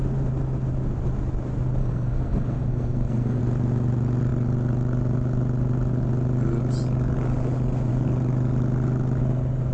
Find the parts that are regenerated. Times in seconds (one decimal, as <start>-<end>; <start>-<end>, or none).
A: 1.8-3.4